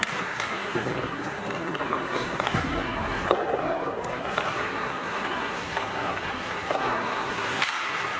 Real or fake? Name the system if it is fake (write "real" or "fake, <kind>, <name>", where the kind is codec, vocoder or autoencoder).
fake, codec, SNAC